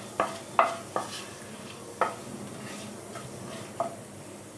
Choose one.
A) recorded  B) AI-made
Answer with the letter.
A